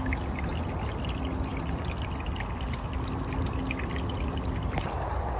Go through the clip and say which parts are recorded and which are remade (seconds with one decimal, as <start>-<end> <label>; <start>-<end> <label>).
0.0-5.4 recorded